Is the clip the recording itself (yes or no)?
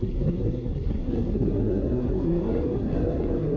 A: no